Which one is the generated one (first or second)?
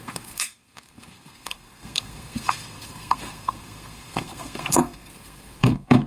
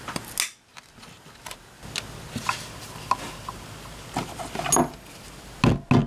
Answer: first